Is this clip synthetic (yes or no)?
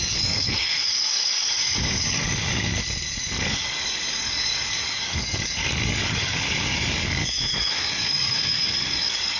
yes